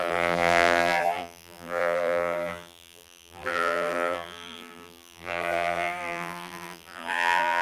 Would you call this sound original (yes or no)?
no